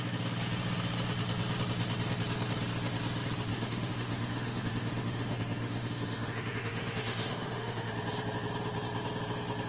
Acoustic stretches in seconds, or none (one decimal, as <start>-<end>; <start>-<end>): 0.0-3.5; 7.9-9.7